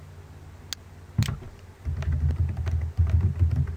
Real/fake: real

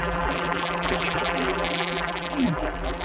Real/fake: fake